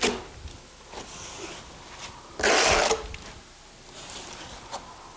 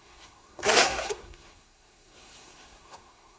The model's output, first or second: second